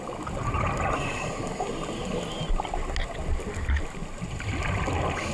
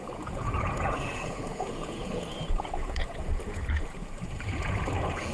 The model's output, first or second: second